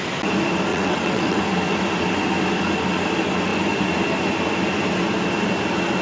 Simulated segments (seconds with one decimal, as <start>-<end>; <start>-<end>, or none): 0.7-1.4